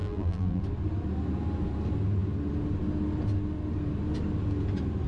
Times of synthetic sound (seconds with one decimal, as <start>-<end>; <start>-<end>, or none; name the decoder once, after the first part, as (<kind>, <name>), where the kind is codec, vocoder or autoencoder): 0.0-0.6 (vocoder, BigVGAN v2)